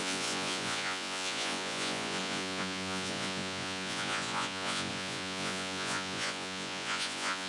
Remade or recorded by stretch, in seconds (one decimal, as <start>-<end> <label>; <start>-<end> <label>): 0.0-7.5 remade

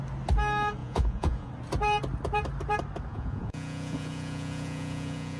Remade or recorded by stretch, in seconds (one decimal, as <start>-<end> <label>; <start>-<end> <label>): 0.0-0.8 recorded; 0.8-1.5 remade; 1.5-3.1 recorded; 3.1-5.4 remade

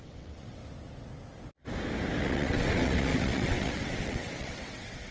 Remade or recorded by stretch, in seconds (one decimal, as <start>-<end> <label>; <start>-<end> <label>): 0.0-0.6 remade; 0.6-2.2 recorded; 2.2-5.1 remade

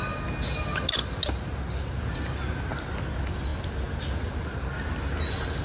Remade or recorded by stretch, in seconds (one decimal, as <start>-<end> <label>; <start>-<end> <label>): 0.0-5.6 recorded

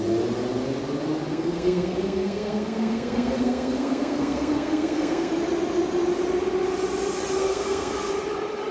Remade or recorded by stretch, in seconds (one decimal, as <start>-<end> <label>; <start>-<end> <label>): 0.0-1.3 recorded; 1.3-5.3 remade; 5.3-7.4 recorded; 7.4-8.1 remade; 8.1-8.7 recorded